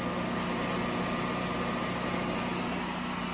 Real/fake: real